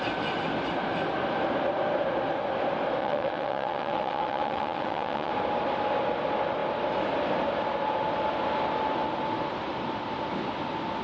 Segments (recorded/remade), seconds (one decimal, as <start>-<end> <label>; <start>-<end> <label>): 0.0-3.0 recorded; 3.0-5.3 remade; 5.3-11.0 recorded